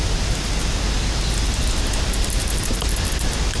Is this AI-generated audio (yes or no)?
no